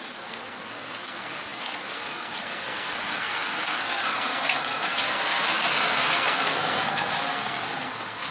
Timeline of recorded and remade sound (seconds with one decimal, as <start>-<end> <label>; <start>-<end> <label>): 0.0-8.3 remade